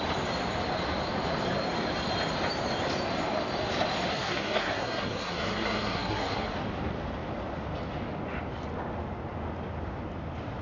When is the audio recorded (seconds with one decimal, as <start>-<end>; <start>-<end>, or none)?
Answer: 0.0-4.1; 6.5-10.6